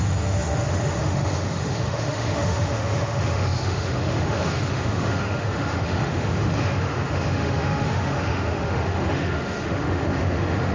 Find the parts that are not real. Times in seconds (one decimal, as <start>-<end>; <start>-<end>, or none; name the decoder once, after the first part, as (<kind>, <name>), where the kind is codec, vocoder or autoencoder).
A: 0.0-10.7 (autoencoder, DAC-VAE)